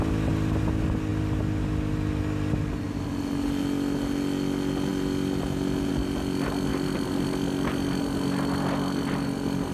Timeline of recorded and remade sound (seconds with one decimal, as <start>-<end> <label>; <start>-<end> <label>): 0.0-9.7 recorded